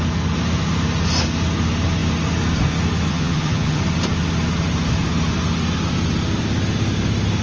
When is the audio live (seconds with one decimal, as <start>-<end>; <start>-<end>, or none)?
0.0-3.1; 3.8-7.4